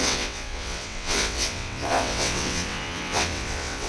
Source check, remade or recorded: remade